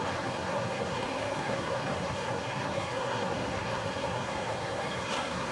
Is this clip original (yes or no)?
no